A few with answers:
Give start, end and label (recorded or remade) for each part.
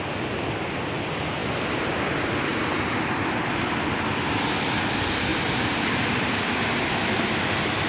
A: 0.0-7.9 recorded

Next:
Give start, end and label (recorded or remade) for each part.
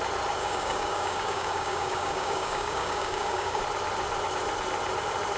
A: 0.0-0.4 recorded; 0.4-3.6 remade; 3.6-5.4 recorded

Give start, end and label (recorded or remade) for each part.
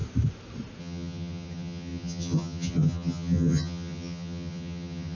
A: 0.0-0.8 recorded; 0.8-5.1 remade